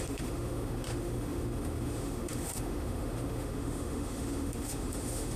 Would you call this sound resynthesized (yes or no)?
yes